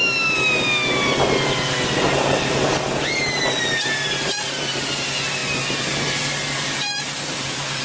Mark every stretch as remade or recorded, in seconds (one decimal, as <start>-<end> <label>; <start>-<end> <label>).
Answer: 0.0-7.8 recorded